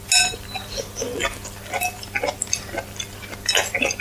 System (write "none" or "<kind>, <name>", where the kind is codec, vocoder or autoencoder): none